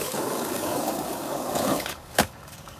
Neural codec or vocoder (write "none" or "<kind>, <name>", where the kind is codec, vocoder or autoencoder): codec, DAC